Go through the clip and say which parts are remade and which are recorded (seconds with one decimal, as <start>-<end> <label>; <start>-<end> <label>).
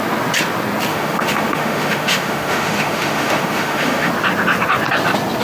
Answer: 0.0-0.9 recorded; 0.9-4.1 remade; 4.1-5.4 recorded